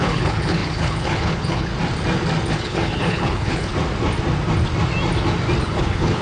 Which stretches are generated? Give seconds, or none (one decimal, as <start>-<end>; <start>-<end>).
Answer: 0.0-1.7; 2.5-3.7; 5.6-6.2